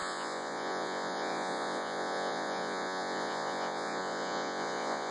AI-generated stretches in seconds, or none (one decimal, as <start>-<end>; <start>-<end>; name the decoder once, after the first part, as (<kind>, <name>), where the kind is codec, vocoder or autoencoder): 0.0-5.1 (vocoder, Vocos)